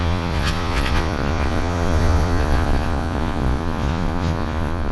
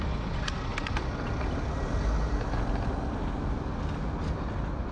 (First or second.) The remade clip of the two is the first